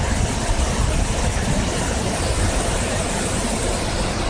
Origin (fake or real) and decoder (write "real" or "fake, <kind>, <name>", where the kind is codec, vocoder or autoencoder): real